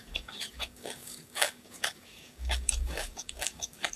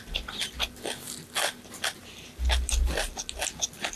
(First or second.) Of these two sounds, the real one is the second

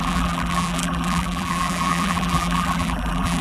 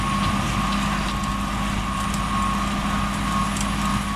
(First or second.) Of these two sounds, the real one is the second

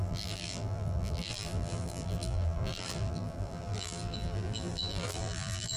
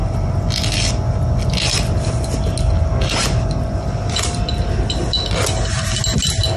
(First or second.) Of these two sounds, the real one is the second